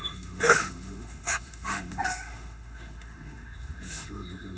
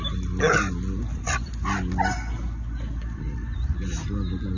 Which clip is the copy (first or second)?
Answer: first